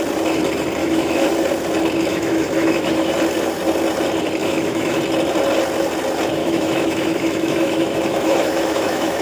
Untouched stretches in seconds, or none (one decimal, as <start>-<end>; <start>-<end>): 0.0-0.8; 1.3-2.1; 3.1-4.4; 5.0-6.4